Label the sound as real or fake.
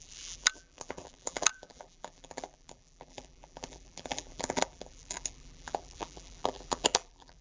fake